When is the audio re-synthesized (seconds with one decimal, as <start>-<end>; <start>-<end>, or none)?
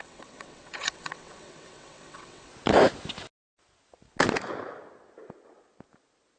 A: 0.0-2.5